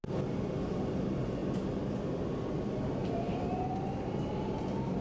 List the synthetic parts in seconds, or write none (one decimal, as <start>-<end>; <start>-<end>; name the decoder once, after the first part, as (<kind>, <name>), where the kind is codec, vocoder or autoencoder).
3.0-3.7 (vocoder, BigVGAN v2)